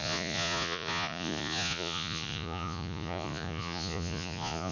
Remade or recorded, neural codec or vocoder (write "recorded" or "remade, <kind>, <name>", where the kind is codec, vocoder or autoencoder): remade, vocoder, Vocos